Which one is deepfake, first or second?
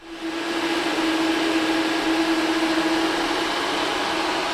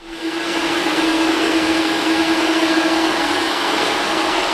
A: second